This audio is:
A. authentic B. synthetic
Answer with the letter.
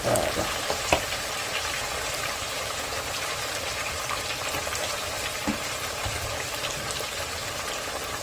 B